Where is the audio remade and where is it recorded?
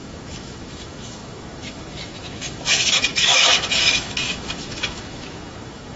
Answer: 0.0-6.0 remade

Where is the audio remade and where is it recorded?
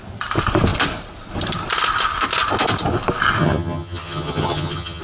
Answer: 0.0-3.4 recorded; 3.4-5.0 remade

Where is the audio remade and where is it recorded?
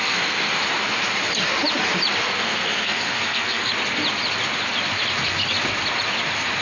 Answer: 0.0-0.6 remade; 0.6-2.2 recorded; 2.2-3.7 remade; 3.7-6.6 recorded